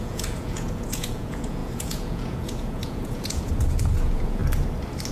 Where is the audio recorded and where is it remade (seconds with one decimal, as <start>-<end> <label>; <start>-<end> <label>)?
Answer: 0.0-4.4 remade; 4.4-5.1 recorded